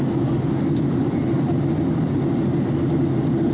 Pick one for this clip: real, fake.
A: real